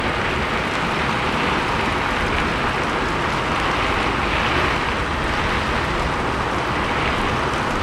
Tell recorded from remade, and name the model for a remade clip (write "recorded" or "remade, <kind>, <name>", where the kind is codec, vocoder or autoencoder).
recorded